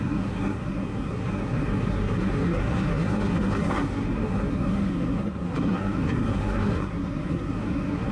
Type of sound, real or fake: fake